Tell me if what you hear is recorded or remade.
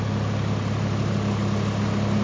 recorded